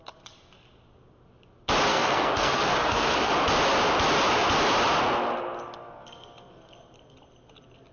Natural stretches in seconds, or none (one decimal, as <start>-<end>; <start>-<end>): 0.0-1.9; 3.3-7.9